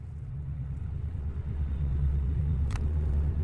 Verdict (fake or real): fake